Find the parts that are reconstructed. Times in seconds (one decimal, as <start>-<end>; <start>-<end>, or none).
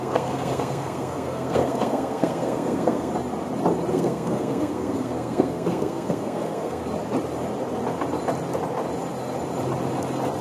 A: 0.0-3.1; 3.9-6.8